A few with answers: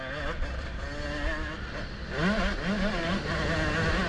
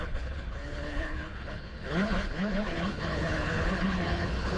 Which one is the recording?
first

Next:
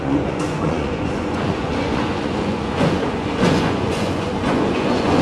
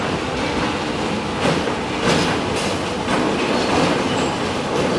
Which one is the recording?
second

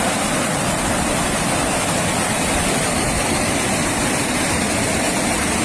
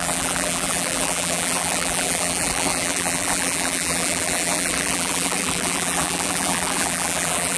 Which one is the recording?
first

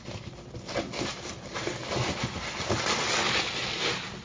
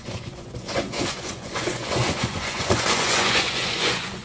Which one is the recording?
first